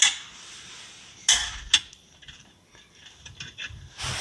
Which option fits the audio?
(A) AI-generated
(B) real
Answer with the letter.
B